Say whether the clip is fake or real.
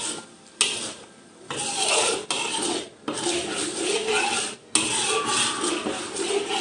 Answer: real